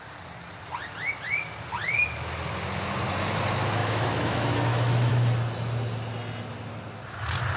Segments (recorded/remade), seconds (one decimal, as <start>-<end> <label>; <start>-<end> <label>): 0.0-3.8 recorded; 3.8-5.1 remade; 5.1-7.6 recorded